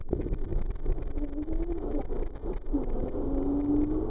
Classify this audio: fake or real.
real